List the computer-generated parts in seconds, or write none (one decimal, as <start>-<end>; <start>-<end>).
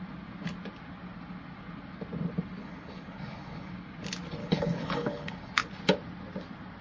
2.6-3.7; 4.4-5.5